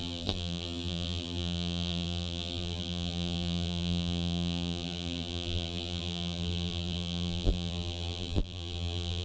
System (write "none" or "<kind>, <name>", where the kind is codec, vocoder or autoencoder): vocoder, BigVGAN v2